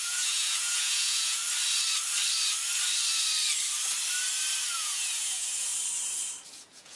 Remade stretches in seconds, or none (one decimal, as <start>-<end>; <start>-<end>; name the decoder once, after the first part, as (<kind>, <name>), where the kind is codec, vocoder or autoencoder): 0.0-1.4 (vocoder, Vocos); 4.8-5.7; 6.5-7.0